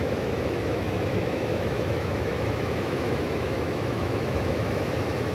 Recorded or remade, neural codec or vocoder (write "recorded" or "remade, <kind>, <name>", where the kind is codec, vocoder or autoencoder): remade, autoencoder, DAC-VAE